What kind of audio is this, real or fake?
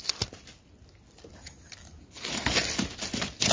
real